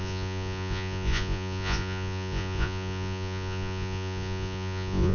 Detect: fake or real fake